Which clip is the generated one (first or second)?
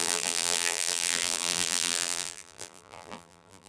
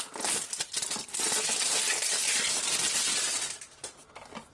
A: first